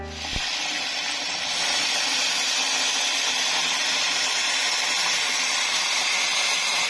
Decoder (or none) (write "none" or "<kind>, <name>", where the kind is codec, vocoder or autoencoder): none